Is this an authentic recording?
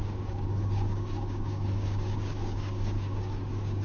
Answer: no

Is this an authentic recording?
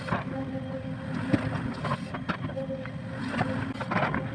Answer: yes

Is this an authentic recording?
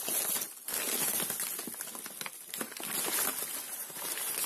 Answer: yes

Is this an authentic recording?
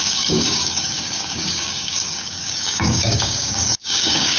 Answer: no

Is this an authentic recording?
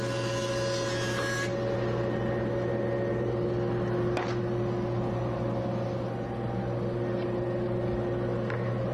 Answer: yes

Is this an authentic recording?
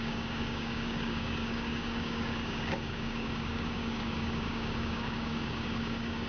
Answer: no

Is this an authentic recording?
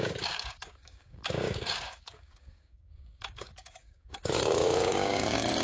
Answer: no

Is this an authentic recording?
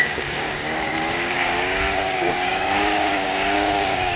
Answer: no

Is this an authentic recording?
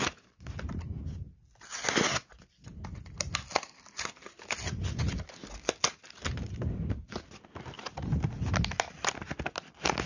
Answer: yes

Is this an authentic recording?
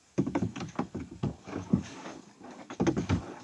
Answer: no